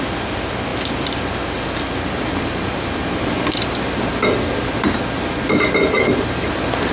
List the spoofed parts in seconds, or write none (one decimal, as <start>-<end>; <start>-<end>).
none